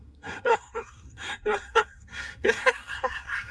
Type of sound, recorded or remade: remade